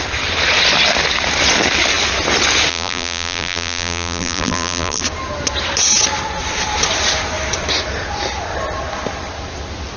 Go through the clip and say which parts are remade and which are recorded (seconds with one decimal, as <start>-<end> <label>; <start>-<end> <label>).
0.0-2.7 recorded; 2.7-5.0 remade; 5.0-10.0 recorded